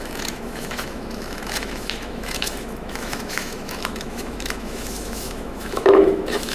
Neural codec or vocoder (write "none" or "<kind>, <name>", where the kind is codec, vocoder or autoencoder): autoencoder, DAC-VAE